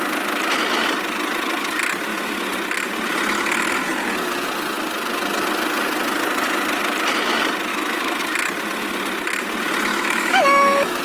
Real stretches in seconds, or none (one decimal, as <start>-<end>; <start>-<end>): 0.0-7.7; 8.2-9.9